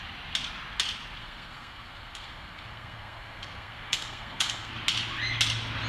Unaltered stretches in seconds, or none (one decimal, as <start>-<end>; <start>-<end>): 0.0-1.2; 4.7-5.9